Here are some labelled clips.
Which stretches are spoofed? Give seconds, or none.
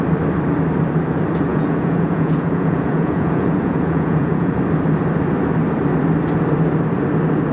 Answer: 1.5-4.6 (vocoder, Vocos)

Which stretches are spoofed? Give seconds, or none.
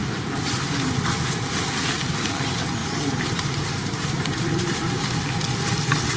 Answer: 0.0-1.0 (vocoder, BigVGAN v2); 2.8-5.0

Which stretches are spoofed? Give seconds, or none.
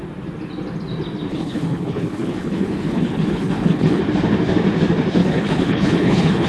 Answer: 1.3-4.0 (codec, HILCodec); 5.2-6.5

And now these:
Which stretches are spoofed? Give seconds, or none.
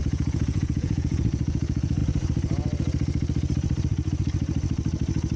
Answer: 0.0-2.0 (vocoder, Vocos)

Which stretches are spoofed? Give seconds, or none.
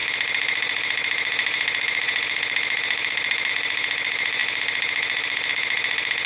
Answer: 0.0-6.3 (vocoder, Vocos)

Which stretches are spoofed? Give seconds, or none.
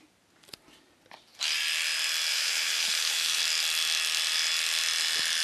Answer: 2.3-3.4 (autoencoder, DAC-VAE)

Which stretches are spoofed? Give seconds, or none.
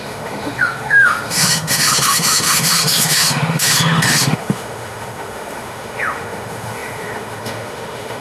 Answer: 0.0-8.2 (autoencoder, DAC-VAE)